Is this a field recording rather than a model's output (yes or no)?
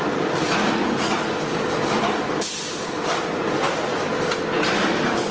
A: yes